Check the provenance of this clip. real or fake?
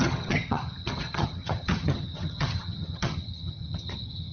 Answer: fake